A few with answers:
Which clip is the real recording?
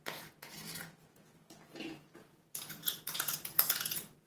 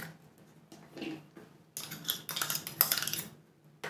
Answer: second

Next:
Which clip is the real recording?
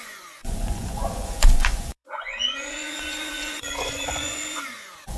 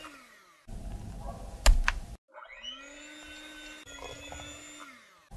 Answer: second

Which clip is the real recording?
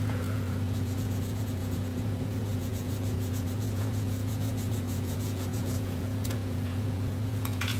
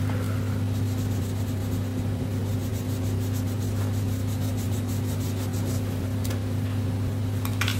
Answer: second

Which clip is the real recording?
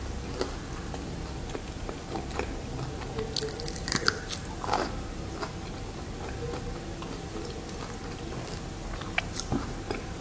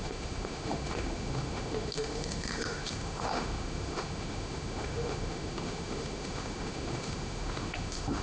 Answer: first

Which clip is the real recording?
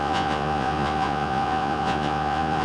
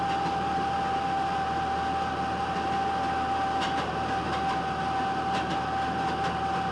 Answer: second